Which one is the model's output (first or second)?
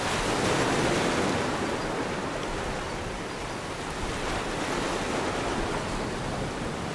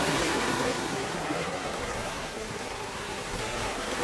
second